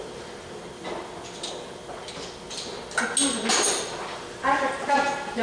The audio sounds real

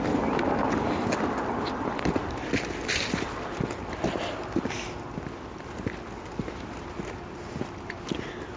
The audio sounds real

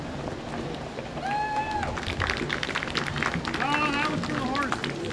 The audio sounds real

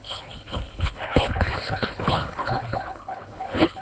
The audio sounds fake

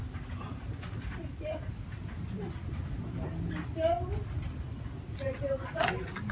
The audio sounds real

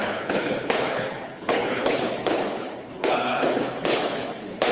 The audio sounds fake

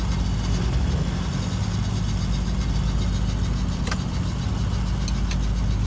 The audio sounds real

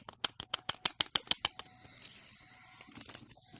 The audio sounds real